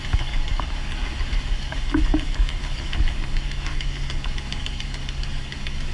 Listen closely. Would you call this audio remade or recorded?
remade